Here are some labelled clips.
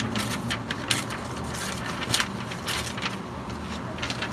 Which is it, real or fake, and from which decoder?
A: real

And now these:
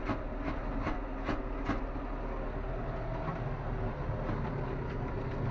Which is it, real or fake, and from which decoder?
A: real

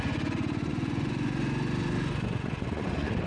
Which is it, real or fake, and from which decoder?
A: fake, vocoder, Vocos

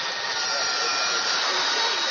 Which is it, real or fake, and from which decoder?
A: real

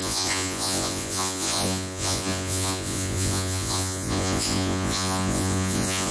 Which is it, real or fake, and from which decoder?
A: fake, vocoder, Vocos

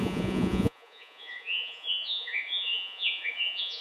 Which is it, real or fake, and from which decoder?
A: fake, vocoder, Vocos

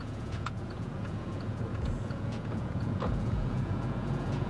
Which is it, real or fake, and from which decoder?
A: fake, vocoder, Vocos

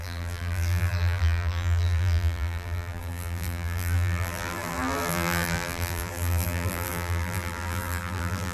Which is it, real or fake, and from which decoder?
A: fake, vocoder, BigVGAN v2